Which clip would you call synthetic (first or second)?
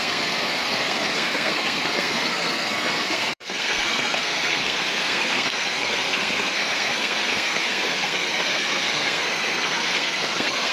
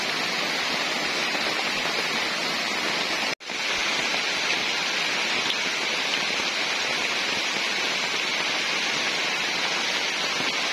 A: first